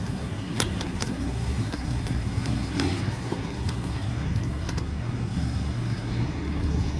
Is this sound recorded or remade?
remade